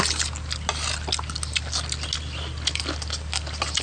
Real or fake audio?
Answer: real